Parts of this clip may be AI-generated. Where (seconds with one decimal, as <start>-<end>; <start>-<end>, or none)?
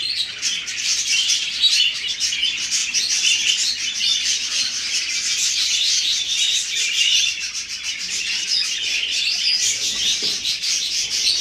0.6-1.3; 2.8-3.5; 8.9-9.5